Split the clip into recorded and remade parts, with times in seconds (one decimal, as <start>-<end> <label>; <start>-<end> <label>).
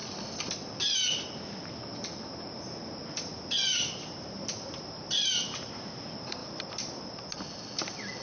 0.0-3.7 recorded; 3.7-5.9 remade; 5.9-6.4 recorded; 6.4-7.0 remade; 7.0-8.2 recorded